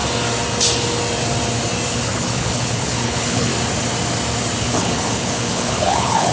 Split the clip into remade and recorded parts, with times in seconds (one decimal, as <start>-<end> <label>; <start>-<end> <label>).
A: 0.0-1.9 recorded; 1.9-3.5 remade; 3.5-4.6 recorded; 4.6-6.3 remade